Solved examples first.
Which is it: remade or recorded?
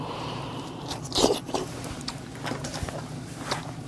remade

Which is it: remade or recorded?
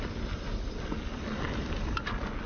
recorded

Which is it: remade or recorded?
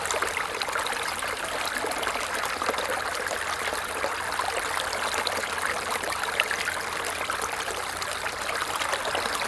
recorded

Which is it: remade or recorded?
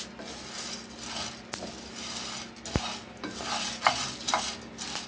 recorded